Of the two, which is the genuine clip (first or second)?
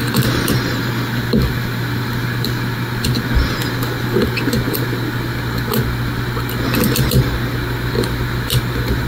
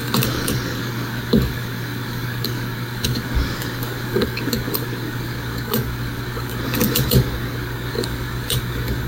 first